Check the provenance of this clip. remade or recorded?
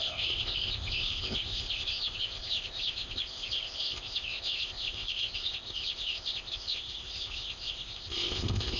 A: remade